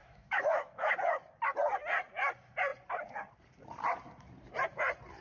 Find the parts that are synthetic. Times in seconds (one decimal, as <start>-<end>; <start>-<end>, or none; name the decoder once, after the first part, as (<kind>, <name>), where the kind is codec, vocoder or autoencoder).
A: 0.0-0.9 (autoencoder, DAC-VAE)